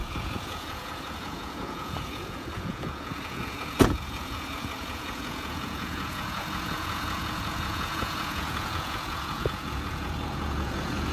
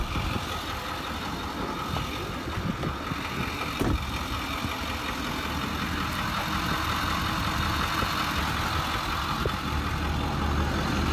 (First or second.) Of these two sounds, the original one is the second